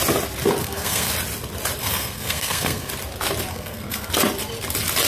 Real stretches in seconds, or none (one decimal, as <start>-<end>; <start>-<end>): 0.0-0.6; 1.1-1.8; 2.9-3.5; 4.1-5.1